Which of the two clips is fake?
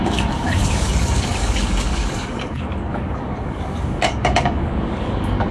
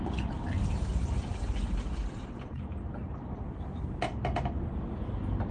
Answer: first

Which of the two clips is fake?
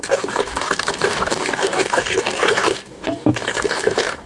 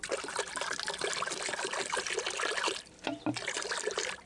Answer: first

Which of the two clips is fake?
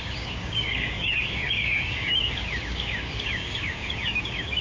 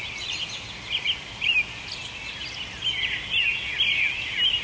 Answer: first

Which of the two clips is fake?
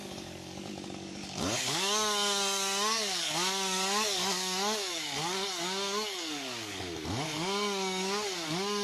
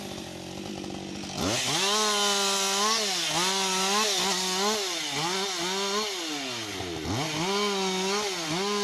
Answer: first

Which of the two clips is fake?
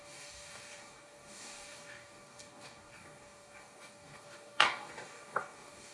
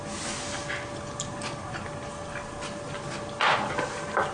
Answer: first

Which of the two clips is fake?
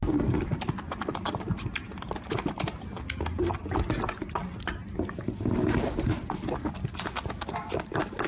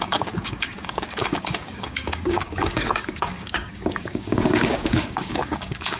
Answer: second